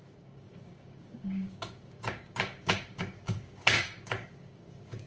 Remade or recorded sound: remade